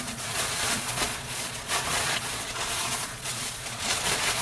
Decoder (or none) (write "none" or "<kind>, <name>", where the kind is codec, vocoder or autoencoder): vocoder, Vocos